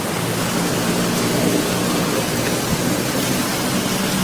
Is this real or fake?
real